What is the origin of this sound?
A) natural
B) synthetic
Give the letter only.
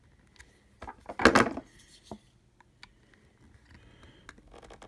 A